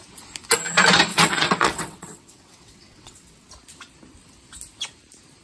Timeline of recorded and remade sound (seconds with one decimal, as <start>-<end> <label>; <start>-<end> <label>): 0.0-1.1 recorded; 1.1-3.5 remade; 3.5-5.4 recorded